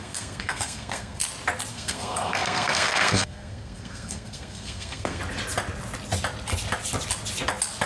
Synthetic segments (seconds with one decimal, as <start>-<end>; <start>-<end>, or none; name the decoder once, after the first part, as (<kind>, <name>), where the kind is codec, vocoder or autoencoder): 0.0-1.2 (codec, SNAC); 1.7-5.2